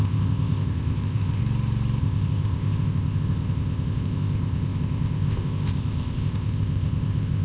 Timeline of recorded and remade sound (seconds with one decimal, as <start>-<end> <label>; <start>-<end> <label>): 0.0-1.4 remade; 1.4-2.0 recorded; 2.0-7.4 remade